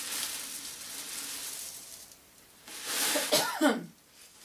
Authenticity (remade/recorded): remade